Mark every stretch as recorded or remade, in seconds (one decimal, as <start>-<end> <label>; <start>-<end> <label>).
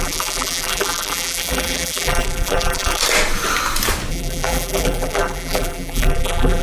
0.0-3.0 remade; 3.0-4.1 recorded; 4.1-6.6 remade